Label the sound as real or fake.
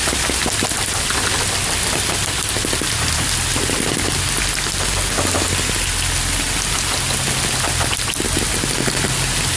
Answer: real